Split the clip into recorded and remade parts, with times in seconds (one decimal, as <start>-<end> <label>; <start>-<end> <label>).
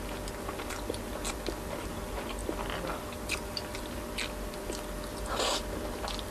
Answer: 0.0-6.3 recorded